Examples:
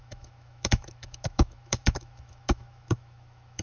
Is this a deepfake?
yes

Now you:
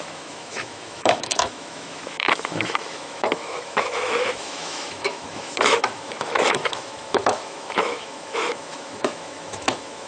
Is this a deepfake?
yes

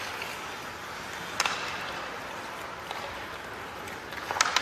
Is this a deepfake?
no